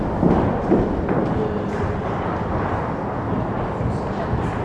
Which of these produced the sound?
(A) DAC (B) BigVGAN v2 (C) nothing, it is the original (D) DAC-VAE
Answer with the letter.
C